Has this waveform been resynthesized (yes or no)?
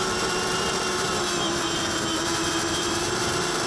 yes